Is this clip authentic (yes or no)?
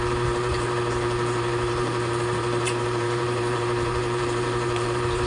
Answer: no